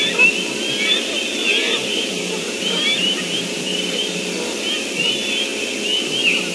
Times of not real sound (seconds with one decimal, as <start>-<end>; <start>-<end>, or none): 1.6-4.3